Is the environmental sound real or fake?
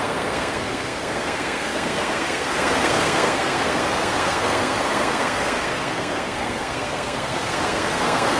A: fake